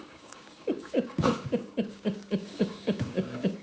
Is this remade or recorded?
remade